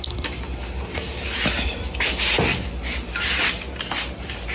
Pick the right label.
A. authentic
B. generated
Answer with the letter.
A